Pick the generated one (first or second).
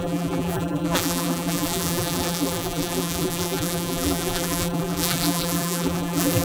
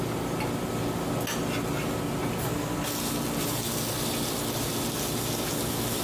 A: first